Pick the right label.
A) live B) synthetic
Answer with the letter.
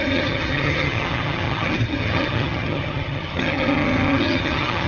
B